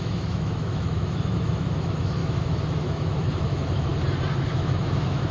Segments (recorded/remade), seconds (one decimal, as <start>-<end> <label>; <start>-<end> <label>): 0.0-3.9 remade; 3.9-4.4 recorded; 4.4-5.3 remade